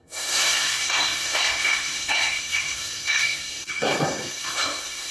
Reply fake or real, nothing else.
fake